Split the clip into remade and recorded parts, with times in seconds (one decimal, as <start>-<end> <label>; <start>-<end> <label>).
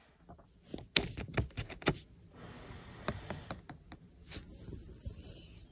0.0-5.7 recorded